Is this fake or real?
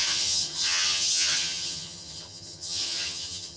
fake